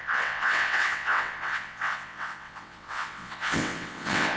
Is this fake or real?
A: fake